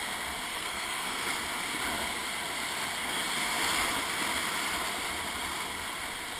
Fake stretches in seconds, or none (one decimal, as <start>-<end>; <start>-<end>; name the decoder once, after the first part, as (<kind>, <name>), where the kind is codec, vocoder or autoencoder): 0.5-1.3 (codec, SNAC)